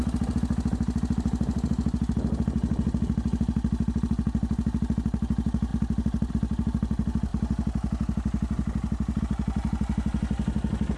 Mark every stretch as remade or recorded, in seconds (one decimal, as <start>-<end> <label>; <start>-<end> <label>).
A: 0.0-11.0 recorded